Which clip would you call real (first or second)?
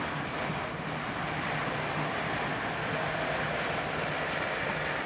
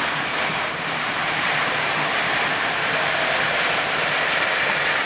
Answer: first